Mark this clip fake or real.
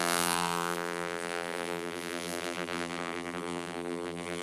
fake